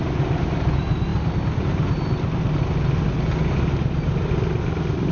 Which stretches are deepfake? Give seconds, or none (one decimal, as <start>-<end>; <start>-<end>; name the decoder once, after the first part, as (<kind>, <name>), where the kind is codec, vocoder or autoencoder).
none